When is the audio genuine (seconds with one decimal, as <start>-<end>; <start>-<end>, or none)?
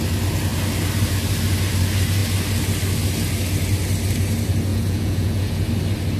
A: 0.0-4.7; 5.7-6.2